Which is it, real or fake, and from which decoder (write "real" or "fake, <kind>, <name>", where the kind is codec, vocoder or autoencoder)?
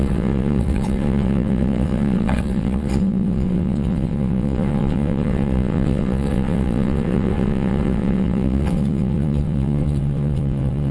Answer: fake, vocoder, WaveNeXt